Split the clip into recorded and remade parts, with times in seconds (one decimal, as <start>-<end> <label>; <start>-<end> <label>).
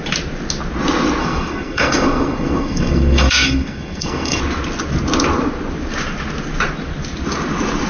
0.0-1.2 recorded; 1.2-4.4 remade; 4.4-7.9 recorded